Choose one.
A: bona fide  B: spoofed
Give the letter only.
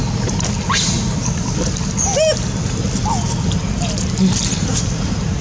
A